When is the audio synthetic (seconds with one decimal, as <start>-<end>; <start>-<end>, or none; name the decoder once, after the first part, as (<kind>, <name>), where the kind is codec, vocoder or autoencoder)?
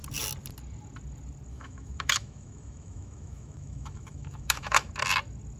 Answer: 1.5-4.9 (autoencoder, DAC-VAE)